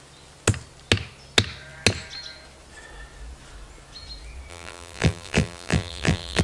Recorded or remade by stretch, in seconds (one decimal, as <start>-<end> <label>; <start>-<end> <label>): 0.0-4.5 recorded; 4.5-6.4 remade